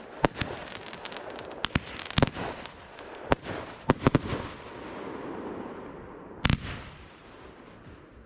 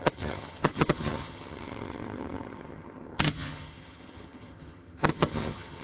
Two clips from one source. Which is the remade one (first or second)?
second